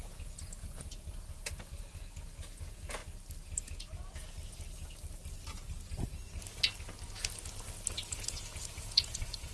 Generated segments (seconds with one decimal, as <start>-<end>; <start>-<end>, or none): 0.0-3.0; 3.6-4.0; 8.1-9.5